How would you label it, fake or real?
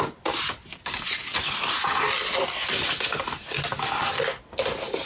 real